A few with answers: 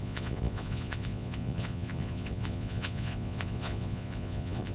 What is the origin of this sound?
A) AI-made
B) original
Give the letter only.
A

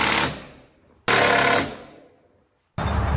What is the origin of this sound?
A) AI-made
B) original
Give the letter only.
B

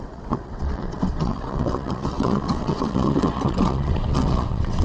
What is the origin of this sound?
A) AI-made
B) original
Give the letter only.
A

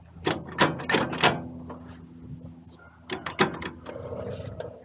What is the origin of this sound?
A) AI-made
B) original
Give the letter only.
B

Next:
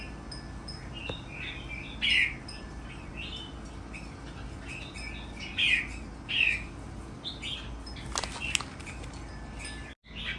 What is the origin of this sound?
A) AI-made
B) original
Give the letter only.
B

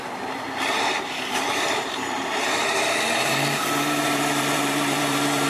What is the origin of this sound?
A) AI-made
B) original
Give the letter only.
A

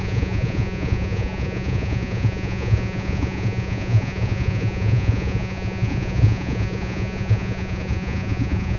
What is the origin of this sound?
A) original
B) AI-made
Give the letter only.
B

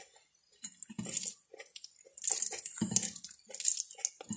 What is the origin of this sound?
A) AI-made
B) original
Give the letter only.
B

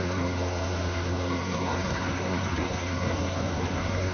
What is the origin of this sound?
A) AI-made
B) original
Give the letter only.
A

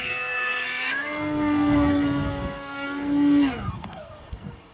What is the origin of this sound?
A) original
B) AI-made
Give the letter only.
B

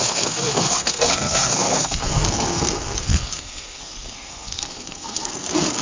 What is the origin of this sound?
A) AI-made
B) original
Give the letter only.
A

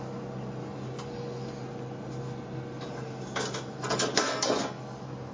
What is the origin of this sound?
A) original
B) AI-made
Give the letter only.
A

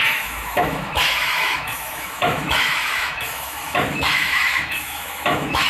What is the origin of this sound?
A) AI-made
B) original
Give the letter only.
A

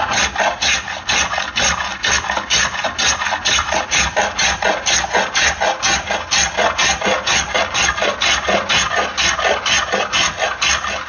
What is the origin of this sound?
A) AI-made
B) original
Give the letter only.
B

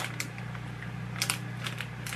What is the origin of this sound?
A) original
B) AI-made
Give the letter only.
A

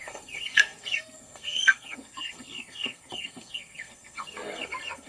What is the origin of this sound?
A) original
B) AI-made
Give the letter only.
B